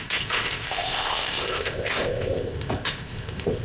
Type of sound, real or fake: fake